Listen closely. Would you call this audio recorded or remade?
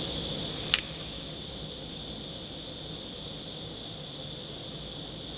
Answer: recorded